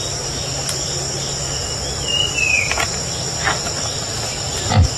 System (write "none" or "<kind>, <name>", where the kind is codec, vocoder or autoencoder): none